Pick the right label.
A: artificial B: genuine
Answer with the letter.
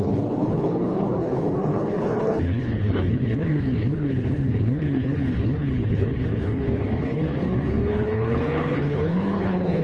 A